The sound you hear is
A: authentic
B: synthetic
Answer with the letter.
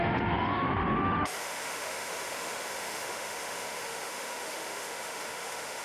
B